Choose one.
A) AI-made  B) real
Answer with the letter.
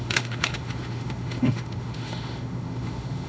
A